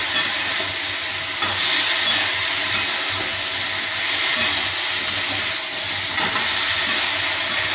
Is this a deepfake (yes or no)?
no